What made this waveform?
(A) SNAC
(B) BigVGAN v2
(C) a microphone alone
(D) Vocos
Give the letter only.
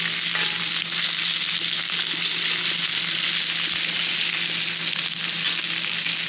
C